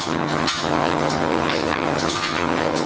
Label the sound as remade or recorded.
remade